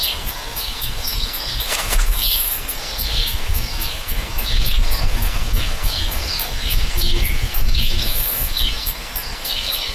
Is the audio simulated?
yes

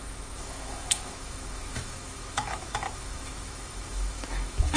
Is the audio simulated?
yes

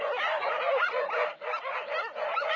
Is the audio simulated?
no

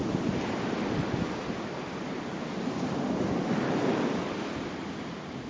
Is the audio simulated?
no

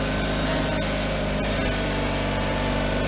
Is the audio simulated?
no